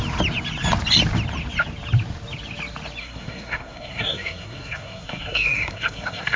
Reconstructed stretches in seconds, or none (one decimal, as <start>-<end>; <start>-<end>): 3.0-6.4